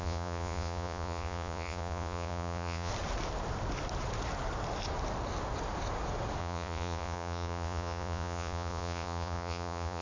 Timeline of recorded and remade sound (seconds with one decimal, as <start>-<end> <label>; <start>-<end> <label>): 0.0-2.9 remade; 2.9-6.4 recorded; 6.4-10.0 remade